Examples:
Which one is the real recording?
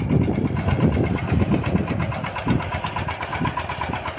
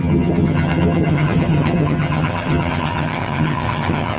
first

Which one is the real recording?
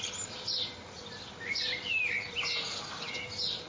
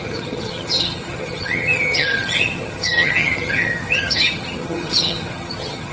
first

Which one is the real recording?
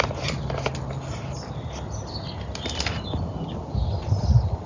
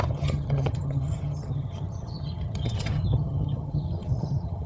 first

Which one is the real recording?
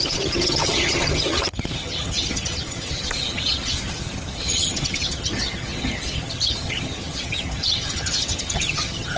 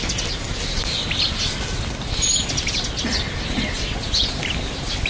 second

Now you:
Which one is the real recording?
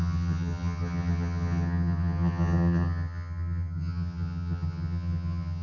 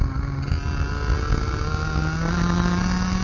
second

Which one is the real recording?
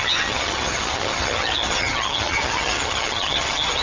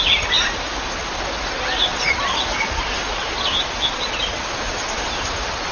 second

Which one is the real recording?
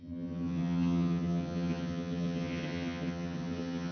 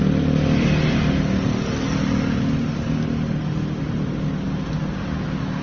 second